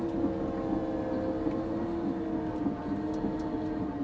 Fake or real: real